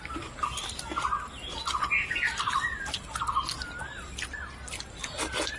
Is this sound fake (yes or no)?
no